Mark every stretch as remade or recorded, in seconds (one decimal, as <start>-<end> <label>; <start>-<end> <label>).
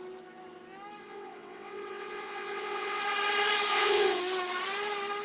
0.0-1.0 recorded; 1.0-3.0 remade; 3.0-3.7 recorded; 3.7-4.2 remade; 4.2-5.2 recorded